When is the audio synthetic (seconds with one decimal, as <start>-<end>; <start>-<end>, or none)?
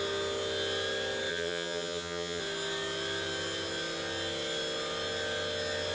1.3-2.4